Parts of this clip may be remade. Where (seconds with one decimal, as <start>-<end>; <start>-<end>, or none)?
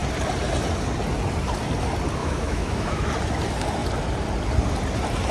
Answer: 2.2-3.1